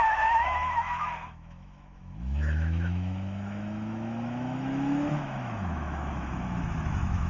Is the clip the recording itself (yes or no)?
no